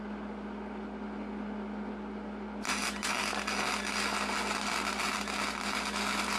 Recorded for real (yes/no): yes